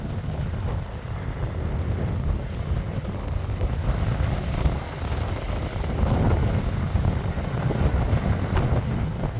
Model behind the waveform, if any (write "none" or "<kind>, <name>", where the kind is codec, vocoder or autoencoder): none